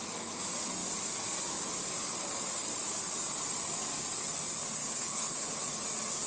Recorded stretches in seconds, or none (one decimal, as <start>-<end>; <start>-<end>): 0.0-4.8; 5.6-6.3